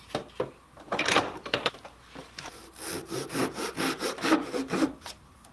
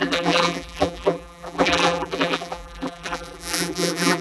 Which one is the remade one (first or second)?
second